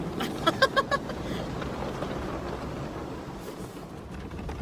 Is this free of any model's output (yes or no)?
yes